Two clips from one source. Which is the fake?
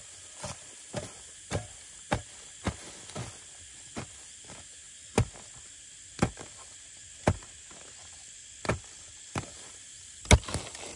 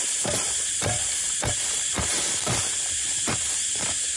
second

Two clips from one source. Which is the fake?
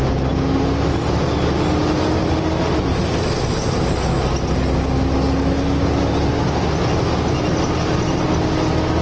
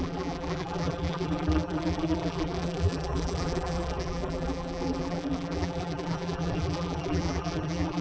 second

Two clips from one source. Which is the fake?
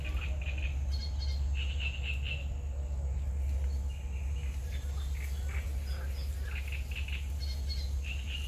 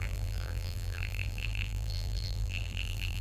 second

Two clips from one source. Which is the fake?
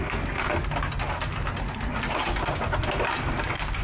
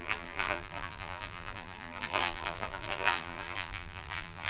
second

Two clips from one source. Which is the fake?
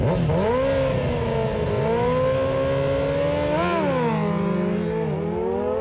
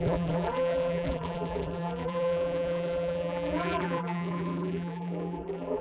second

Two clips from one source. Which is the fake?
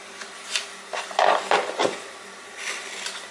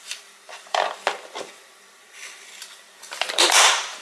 second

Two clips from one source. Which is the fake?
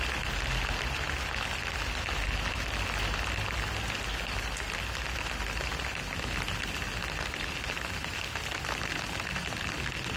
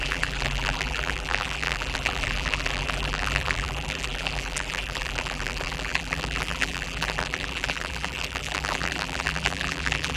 second